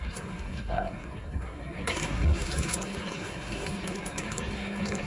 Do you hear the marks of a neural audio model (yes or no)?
yes